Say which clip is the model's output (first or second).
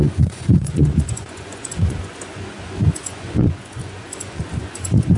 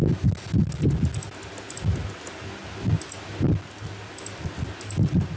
first